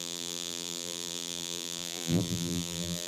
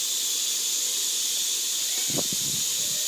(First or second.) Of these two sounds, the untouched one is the second